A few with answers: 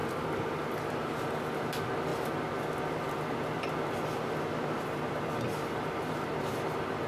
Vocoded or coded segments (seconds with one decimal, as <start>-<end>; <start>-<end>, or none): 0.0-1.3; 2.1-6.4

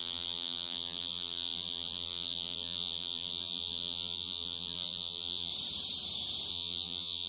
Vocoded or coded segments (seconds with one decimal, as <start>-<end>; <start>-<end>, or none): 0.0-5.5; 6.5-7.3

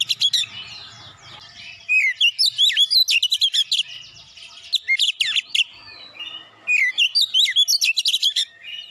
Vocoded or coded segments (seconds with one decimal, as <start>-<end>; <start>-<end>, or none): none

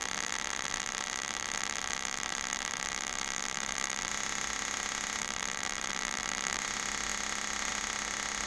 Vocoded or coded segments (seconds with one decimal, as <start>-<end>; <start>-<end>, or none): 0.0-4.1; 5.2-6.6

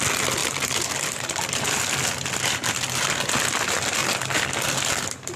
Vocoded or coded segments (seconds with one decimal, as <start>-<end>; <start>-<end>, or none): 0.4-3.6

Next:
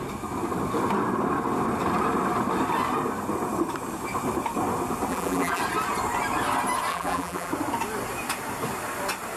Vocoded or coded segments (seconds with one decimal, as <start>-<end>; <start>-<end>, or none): 5.1-5.6; 6.9-7.5

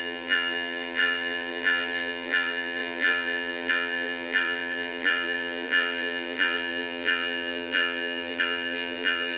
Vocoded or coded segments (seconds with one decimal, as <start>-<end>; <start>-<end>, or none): 0.0-9.4